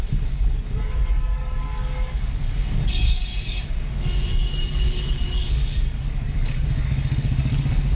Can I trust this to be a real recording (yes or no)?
no